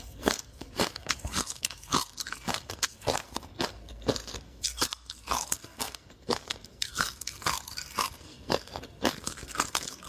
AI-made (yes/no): yes